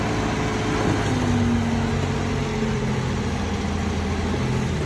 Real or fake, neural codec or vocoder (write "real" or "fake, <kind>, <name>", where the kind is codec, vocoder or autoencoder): real